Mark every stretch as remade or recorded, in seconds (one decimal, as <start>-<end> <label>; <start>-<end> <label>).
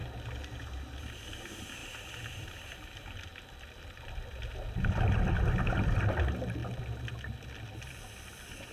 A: 0.0-8.7 recorded